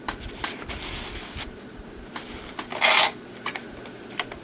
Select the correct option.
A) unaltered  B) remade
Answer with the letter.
A